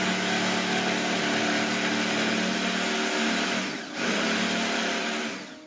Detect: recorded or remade recorded